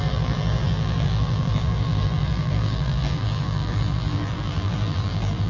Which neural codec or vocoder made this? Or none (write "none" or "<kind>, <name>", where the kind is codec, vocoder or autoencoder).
vocoder, BigVGAN v2